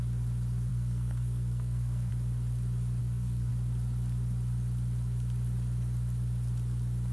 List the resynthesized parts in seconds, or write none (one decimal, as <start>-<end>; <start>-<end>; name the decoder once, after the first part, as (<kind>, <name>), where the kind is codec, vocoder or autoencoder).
0.7-2.1 (codec, SNAC); 3.0-3.5